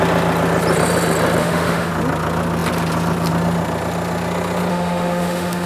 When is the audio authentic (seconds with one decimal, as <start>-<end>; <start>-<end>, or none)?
0.0-1.4; 1.9-4.7